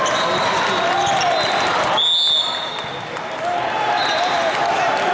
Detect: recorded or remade recorded